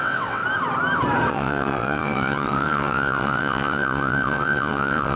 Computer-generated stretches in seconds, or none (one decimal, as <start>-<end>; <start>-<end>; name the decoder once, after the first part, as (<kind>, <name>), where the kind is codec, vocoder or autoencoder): 0.0-0.4 (vocoder, WaveNeXt); 1.3-5.2